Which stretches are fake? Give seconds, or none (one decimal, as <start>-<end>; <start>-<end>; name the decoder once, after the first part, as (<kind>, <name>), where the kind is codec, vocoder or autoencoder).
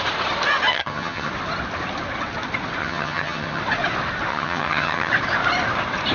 0.7-1.3 (vocoder, HiFi-GAN); 2.8-3.6; 4.3-5.1